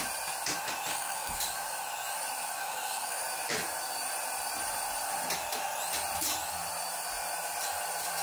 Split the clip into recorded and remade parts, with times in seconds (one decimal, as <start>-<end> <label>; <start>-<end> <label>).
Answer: 0.0-0.9 recorded; 0.9-1.4 remade; 1.4-2.6 recorded; 2.6-3.2 remade; 3.2-8.2 recorded